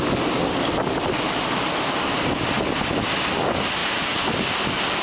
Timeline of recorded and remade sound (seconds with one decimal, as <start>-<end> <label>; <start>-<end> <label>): 0.0-5.0 recorded